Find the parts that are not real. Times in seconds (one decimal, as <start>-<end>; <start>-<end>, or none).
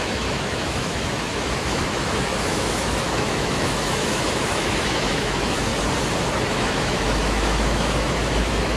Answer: 0.0-5.7; 6.5-8.8